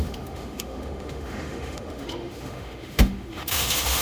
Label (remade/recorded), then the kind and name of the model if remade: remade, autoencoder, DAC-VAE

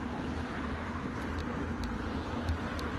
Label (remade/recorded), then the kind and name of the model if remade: recorded